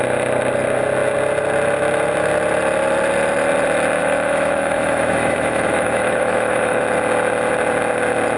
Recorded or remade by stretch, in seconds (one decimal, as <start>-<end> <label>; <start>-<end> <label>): 0.0-4.0 recorded; 4.0-6.8 remade; 6.8-8.4 recorded